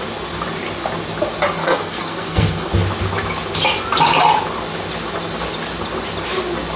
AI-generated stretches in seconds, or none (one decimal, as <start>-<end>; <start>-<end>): 1.6-2.7